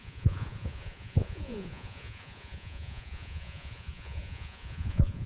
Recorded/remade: remade